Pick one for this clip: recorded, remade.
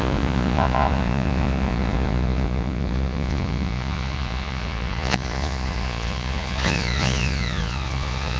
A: remade